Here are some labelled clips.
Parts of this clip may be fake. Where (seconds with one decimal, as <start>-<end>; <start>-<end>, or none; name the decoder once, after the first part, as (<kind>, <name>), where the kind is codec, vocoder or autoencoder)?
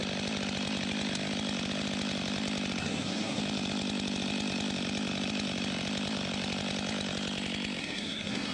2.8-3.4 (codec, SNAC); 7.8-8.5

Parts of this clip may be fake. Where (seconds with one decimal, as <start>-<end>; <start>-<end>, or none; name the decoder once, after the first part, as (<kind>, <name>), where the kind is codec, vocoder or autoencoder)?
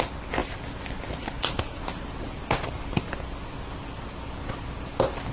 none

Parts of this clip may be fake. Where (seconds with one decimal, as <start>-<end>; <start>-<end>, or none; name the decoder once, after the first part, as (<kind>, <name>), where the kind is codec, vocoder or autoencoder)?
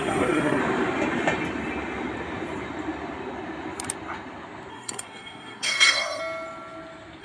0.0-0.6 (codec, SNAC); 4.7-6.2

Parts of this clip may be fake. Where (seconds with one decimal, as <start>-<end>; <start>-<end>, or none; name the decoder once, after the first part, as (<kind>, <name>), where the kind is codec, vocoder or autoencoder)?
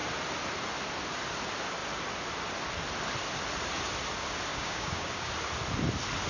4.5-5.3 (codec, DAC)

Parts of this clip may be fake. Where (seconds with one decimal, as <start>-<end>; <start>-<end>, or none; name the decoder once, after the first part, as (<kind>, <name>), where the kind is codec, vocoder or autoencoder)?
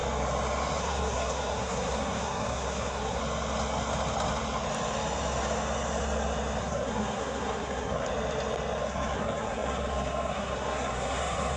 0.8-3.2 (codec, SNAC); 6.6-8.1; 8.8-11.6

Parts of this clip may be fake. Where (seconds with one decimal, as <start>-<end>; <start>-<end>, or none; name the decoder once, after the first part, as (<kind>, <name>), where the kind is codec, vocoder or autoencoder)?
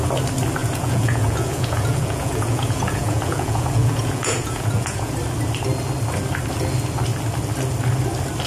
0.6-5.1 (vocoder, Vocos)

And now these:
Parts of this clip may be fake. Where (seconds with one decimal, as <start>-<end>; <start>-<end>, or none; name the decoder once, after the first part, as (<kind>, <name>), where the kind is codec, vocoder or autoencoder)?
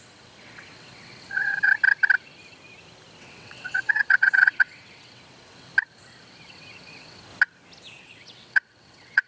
0.0-1.7 (vocoder, WaveNeXt); 3.2-5.7; 6.3-7.3; 8.0-9.3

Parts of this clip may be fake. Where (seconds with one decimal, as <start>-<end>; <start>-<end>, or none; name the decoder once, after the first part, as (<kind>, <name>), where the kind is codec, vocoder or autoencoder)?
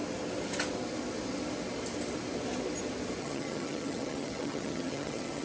3.2-5.4 (vocoder, HiFi-GAN)